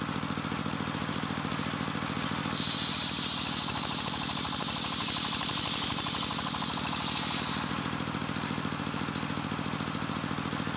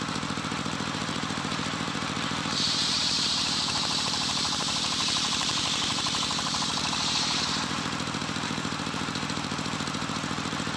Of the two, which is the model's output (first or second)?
second